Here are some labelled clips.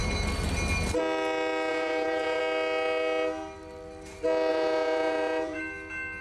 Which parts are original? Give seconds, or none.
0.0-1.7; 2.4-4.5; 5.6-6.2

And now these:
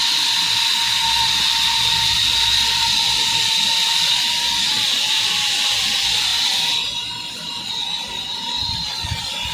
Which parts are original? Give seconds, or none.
0.0-9.5

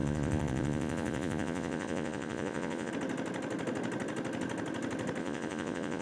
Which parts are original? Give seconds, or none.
2.9-5.2

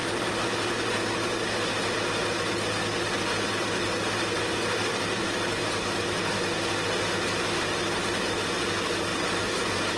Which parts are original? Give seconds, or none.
1.3-4.9; 6.3-9.1

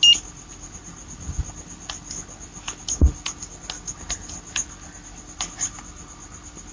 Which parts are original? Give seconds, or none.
0.0-6.7

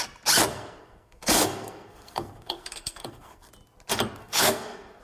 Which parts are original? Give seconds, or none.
0.0-0.5; 3.5-4.2